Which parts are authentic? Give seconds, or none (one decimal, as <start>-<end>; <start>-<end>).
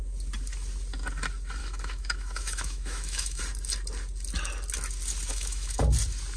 0.0-1.6; 3.4-5.3; 5.8-6.4